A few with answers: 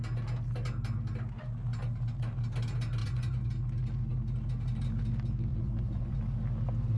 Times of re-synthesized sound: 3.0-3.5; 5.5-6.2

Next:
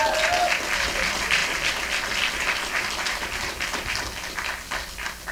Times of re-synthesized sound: none

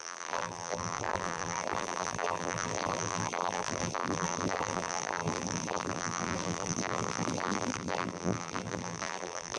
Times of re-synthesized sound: 0.0-9.6

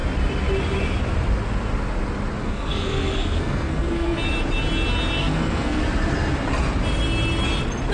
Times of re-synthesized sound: 2.4-4.2; 5.2-5.8

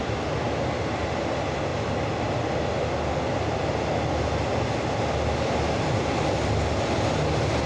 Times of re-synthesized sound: none